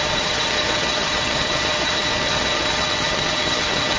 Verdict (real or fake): fake